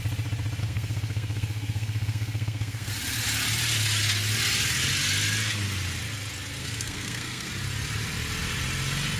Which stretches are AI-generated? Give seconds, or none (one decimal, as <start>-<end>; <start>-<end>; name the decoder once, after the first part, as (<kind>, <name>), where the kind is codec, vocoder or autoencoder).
0.6-2.9 (codec, SNAC); 6.6-7.5